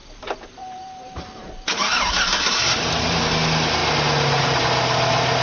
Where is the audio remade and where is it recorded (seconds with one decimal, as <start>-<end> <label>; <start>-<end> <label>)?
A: 0.0-3.2 remade; 3.2-5.4 recorded